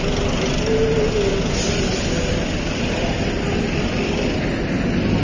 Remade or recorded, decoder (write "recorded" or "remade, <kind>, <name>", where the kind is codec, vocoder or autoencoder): recorded